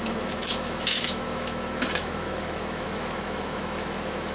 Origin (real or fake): fake